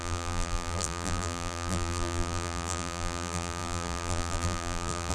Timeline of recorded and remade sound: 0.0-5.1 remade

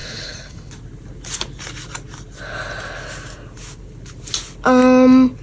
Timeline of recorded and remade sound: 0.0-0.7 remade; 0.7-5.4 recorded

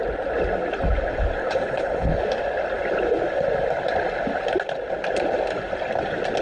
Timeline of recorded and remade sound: 0.0-1.4 recorded; 1.4-2.2 remade; 2.2-6.4 recorded

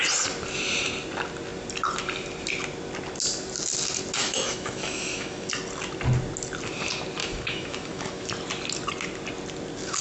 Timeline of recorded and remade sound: 0.0-4.2 recorded; 4.2-5.5 remade; 5.5-7.2 recorded; 7.2-8.3 remade; 8.3-10.0 recorded

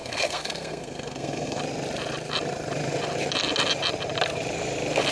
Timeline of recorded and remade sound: 0.0-1.6 remade; 1.6-5.1 recorded